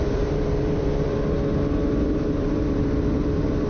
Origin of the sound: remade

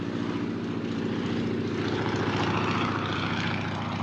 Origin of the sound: remade